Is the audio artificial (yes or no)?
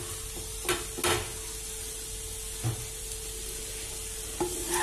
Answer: no